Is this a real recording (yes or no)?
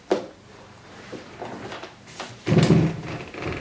no